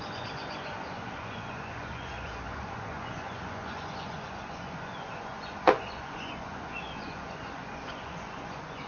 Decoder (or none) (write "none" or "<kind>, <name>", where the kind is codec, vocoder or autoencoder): vocoder, Vocos